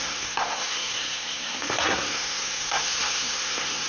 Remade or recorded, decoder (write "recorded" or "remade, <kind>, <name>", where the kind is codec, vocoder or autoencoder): remade, codec, SNAC